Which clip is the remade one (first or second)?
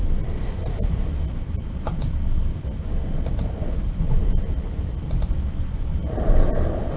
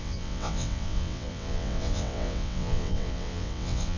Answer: second